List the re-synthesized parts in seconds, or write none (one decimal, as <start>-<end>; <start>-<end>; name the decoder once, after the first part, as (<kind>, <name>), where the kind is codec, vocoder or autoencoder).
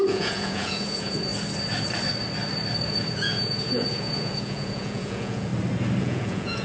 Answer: 0.0-1.3 (vocoder, Vocos); 2.9-5.5; 6.0-6.6